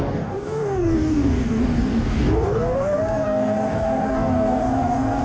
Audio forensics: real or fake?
fake